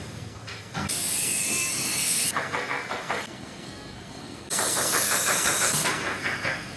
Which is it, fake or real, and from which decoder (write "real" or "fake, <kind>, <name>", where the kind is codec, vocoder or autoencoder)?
fake, codec, SNAC